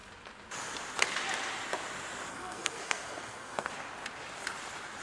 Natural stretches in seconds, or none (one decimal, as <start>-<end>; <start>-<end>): 0.0-2.3; 3.7-5.0